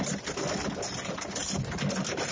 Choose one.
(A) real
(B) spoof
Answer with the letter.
A